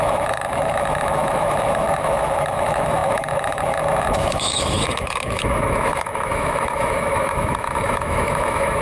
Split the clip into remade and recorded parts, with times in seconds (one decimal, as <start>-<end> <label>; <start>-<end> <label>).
0.0-8.8 remade